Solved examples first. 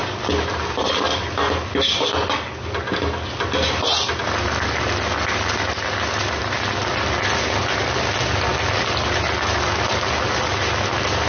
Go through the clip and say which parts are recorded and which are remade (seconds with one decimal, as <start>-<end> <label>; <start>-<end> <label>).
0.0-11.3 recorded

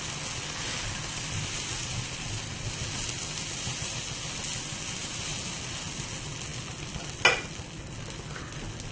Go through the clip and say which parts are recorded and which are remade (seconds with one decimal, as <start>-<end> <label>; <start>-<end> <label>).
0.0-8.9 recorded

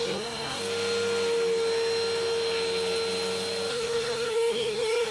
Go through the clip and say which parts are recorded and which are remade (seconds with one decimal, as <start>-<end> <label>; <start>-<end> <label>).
0.0-0.6 remade; 0.6-3.7 recorded; 3.7-5.1 remade

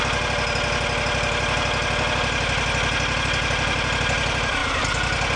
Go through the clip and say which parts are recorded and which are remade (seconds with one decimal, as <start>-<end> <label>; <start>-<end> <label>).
0.0-5.4 recorded